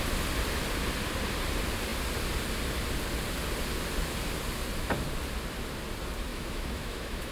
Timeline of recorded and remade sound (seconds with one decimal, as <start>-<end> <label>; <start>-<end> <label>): 0.0-6.3 recorded; 6.3-7.3 remade